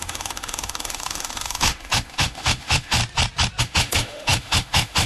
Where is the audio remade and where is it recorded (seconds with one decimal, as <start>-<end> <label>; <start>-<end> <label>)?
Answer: 0.0-3.0 remade; 3.0-3.6 recorded; 3.6-5.1 remade